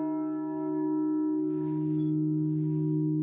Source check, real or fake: real